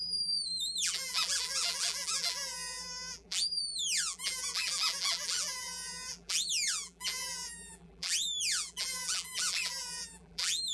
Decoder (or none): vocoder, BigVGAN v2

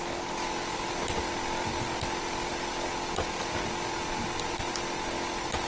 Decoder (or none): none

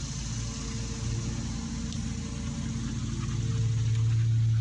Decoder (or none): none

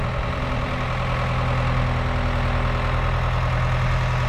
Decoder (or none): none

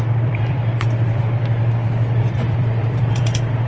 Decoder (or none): vocoder, BigVGAN v2